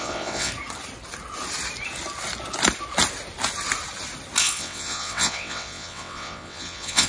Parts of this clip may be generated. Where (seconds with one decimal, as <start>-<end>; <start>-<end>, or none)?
0.0-0.5; 4.4-7.1

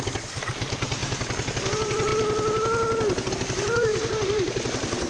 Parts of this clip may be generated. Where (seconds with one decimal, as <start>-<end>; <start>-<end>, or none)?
0.0-2.1; 3.3-5.1